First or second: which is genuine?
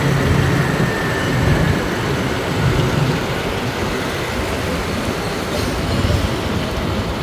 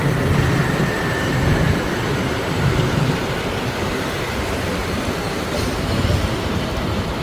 first